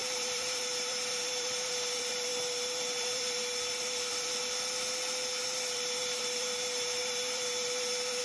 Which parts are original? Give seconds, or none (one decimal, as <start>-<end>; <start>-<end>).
4.4-5.4